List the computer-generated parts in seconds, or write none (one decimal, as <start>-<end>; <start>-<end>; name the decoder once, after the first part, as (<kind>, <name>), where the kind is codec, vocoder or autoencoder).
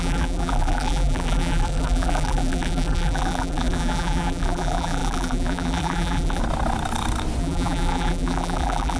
0.0-6.4 (vocoder, BigVGAN v2); 7.4-9.0